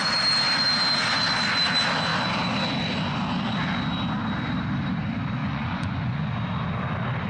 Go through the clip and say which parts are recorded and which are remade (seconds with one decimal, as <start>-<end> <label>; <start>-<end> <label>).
0.0-5.4 recorded; 5.4-6.2 remade; 6.2-7.3 recorded